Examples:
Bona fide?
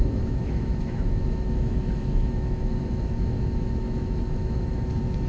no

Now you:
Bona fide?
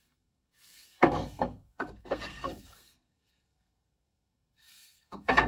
no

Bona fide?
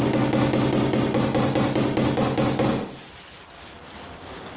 yes